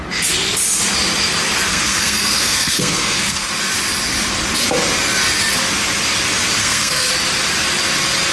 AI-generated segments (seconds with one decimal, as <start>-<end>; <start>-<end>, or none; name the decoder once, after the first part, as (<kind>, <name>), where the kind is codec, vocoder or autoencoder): 1.7-3.5 (codec, SNAC); 6.6-7.1